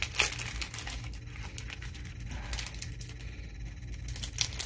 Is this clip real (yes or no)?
yes